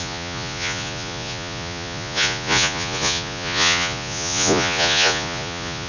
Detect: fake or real fake